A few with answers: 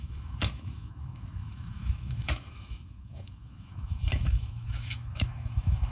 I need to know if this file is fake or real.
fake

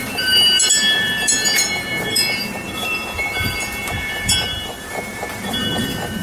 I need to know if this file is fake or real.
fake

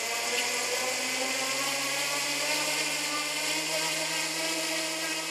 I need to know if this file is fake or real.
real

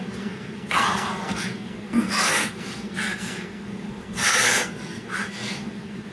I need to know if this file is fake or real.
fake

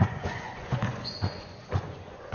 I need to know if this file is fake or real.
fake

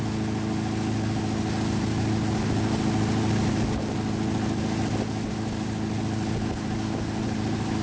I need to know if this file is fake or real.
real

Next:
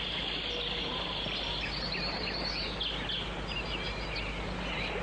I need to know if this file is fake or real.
real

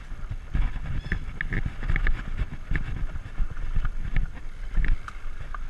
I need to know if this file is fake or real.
real